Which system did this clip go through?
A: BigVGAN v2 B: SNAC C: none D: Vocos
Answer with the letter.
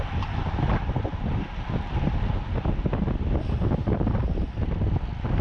A